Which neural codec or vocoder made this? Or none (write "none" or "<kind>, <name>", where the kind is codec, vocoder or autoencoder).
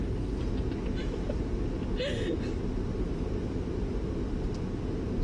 none